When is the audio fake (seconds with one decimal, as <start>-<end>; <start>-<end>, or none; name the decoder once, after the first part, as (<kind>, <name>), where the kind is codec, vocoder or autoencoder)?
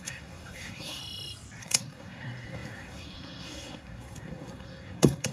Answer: 0.0-1.0 (codec, SNAC); 1.6-5.3